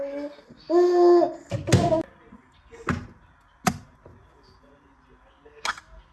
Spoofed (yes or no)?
no